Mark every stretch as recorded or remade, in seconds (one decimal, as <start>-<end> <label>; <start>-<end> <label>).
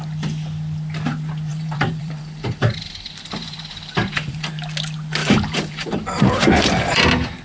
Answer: 0.0-1.5 recorded; 1.5-4.5 remade; 4.5-5.2 recorded; 5.2-7.0 remade; 7.0-7.4 recorded